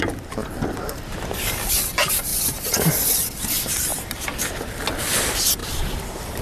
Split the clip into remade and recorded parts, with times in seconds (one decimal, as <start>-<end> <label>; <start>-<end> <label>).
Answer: 0.0-0.4 recorded; 0.4-1.7 remade; 1.7-2.3 recorded; 2.3-2.9 remade; 2.9-5.6 recorded; 5.6-6.4 remade